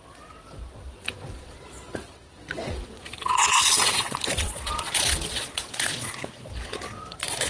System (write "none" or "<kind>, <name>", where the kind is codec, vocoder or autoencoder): vocoder, Vocos